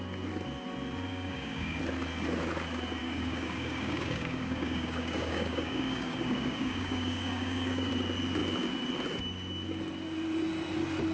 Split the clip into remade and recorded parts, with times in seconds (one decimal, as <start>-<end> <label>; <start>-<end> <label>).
0.0-1.1 recorded; 1.1-1.8 remade; 1.8-3.0 recorded; 3.0-7.9 remade; 7.9-11.1 recorded